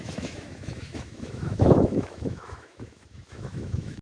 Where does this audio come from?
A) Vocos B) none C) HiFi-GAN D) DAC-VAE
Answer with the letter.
D